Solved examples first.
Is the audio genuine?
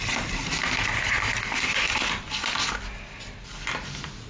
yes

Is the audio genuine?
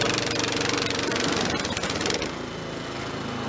yes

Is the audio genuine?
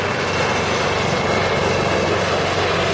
yes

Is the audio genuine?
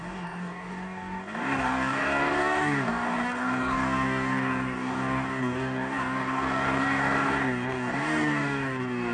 no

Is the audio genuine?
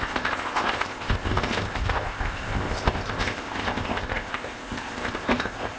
no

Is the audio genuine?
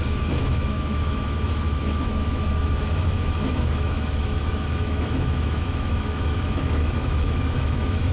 no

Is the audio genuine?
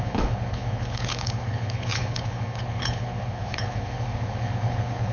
no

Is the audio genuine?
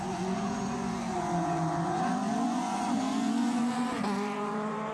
no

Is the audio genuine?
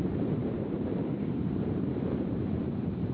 no